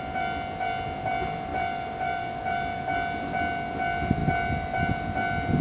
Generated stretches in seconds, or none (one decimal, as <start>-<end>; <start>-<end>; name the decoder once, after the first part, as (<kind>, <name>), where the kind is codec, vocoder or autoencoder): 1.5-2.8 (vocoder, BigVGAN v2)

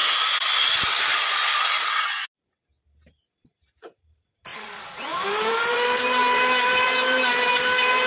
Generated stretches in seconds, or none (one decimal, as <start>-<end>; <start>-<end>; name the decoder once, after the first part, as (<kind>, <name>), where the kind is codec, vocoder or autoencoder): 3.3-8.1 (vocoder, BigVGAN v2)

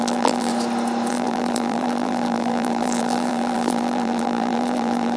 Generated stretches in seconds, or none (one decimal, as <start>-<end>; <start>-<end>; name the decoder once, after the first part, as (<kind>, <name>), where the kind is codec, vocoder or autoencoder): 0.0-0.5 (vocoder, BigVGAN v2); 1.1-5.2

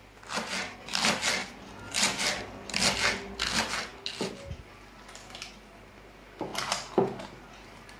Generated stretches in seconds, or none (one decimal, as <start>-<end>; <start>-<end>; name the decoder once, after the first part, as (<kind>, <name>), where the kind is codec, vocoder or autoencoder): none

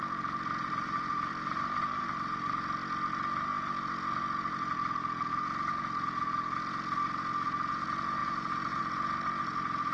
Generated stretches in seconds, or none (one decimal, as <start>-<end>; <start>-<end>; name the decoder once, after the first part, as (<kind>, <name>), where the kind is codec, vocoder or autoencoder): 0.6-2.5 (vocoder, BigVGAN v2); 8.2-8.8